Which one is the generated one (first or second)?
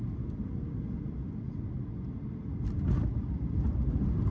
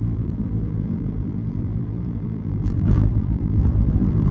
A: second